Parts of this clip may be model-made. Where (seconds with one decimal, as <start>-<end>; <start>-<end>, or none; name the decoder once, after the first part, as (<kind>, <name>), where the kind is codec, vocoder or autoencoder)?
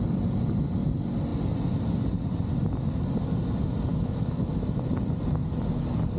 3.9-4.5 (autoencoder, DAC-VAE)